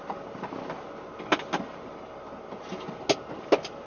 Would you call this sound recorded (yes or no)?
yes